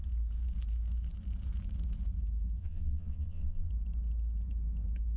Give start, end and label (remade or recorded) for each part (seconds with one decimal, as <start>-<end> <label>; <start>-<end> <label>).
0.0-2.6 recorded; 2.6-3.7 remade; 3.7-5.2 recorded